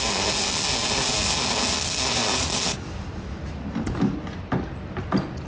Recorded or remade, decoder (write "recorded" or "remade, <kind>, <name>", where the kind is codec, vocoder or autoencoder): recorded